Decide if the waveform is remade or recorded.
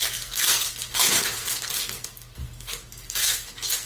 remade